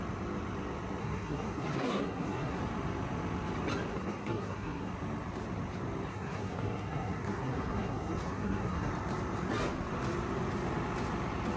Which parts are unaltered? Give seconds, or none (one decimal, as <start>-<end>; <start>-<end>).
0.0-1.0; 2.6-3.9; 4.9-6.1; 8.9-11.6